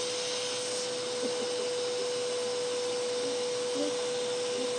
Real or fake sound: real